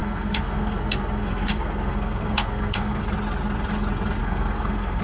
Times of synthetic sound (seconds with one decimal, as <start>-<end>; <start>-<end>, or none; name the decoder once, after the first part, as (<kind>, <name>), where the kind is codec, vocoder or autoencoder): 0.0-3.0 (codec, SNAC); 4.2-5.0